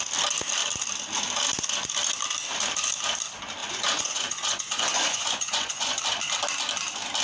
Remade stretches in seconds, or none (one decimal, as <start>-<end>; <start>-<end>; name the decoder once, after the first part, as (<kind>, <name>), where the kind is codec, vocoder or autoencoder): 3.6-6.0 (vocoder, Vocos)